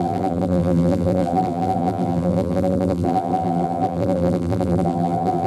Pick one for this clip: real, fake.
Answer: fake